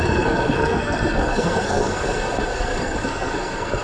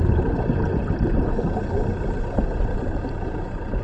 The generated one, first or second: first